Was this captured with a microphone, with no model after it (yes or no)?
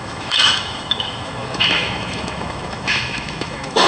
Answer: no